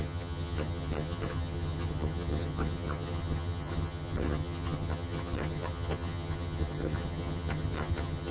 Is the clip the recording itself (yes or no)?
no